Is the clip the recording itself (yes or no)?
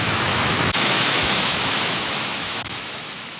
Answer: no